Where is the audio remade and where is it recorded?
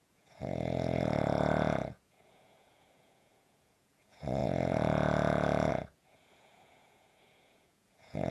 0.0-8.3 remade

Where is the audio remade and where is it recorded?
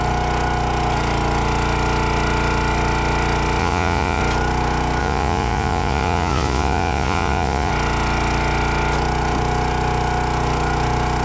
0.0-3.6 recorded; 3.6-4.2 remade; 4.2-5.0 recorded; 5.0-7.7 remade; 7.7-11.2 recorded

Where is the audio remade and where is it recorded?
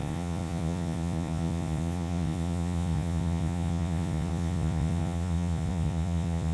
0.0-6.5 remade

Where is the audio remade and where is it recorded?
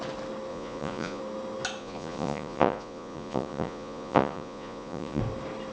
0.0-0.5 recorded; 0.5-1.2 remade; 1.2-1.8 recorded; 1.8-5.2 remade; 5.2-5.7 recorded